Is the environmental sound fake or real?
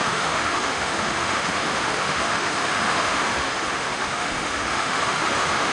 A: fake